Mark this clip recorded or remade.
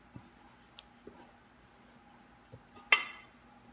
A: recorded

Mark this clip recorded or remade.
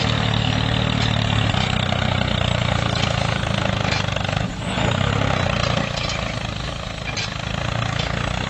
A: recorded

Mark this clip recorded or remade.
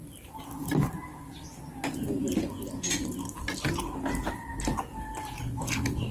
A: recorded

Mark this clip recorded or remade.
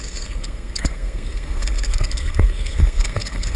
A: remade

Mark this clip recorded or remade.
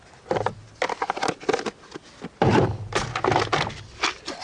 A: recorded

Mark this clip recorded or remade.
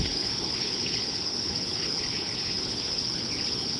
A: remade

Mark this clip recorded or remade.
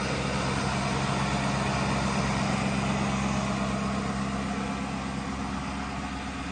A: recorded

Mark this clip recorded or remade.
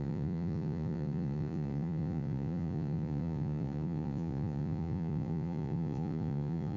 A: remade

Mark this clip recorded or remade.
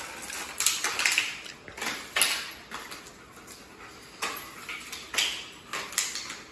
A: recorded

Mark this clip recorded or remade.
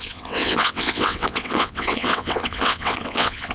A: remade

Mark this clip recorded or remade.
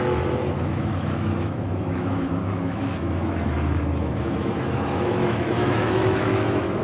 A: remade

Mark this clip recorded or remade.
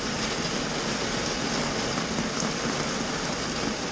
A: recorded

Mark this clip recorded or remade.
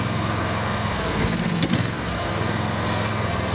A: remade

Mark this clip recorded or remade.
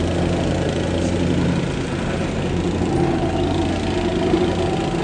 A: recorded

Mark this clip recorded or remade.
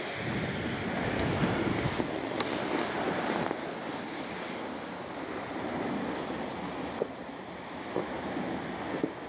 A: recorded